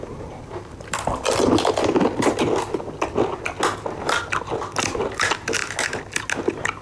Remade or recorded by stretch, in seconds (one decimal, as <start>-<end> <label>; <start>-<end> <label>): 0.0-6.8 recorded